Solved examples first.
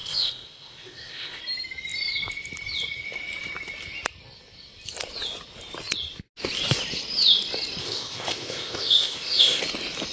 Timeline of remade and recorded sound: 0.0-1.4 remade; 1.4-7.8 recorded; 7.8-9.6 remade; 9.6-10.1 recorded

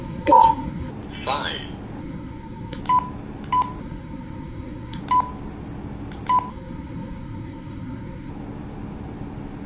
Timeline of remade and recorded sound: 0.0-0.9 remade; 0.9-2.0 recorded; 2.0-2.8 remade; 2.8-3.8 recorded; 3.8-5.0 remade; 5.0-6.5 recorded; 6.5-8.3 remade; 8.3-9.7 recorded